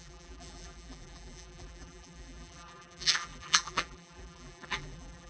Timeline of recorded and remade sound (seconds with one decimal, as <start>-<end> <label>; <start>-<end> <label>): 0.0-5.3 remade

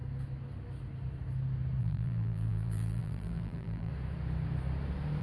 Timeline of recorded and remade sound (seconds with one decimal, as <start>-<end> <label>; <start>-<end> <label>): 0.0-1.8 recorded; 1.8-3.9 remade; 3.9-5.2 recorded

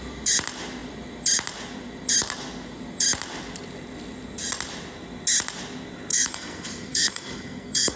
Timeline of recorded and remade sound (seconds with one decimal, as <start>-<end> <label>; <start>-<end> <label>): 0.0-6.1 recorded; 6.1-8.0 remade

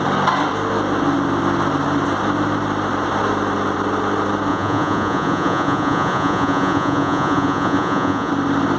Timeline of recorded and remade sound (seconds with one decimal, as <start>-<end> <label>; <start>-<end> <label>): 0.0-4.5 recorded; 4.5-8.3 remade; 8.3-8.8 recorded